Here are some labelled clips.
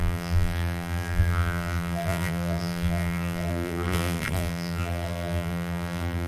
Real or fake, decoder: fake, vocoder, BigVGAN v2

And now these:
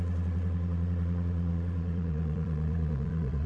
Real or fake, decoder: fake, vocoder, Vocos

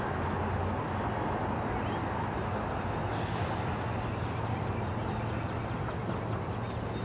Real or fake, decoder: real